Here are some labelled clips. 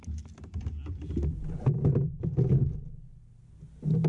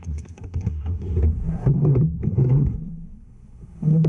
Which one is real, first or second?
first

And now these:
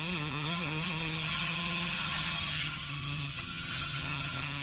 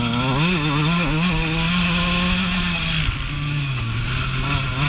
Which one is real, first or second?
second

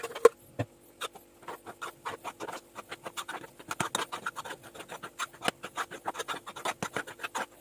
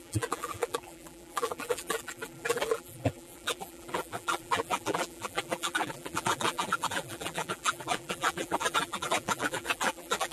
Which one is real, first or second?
first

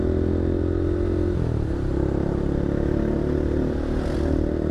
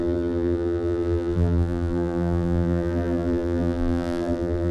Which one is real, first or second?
first